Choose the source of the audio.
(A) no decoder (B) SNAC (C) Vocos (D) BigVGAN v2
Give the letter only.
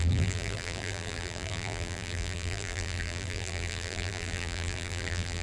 D